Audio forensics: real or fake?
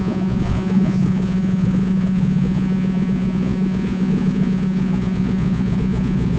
fake